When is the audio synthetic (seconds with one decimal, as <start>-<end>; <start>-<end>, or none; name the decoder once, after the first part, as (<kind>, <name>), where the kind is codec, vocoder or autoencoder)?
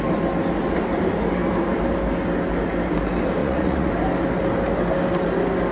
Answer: 3.4-3.9 (vocoder, Vocos)